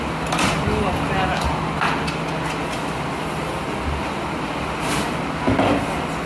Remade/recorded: recorded